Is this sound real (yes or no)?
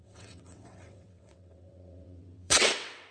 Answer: no